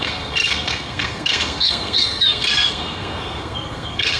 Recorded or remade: remade